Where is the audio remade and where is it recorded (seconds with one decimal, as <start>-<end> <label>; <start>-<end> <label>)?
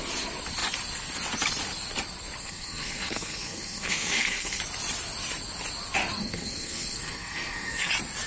0.0-2.4 recorded; 2.4-4.6 remade; 4.6-6.2 recorded; 6.2-7.9 remade; 7.9-8.3 recorded